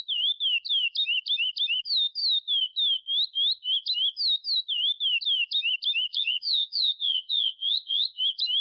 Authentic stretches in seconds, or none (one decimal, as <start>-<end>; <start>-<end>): 0.0-6.1; 8.2-8.6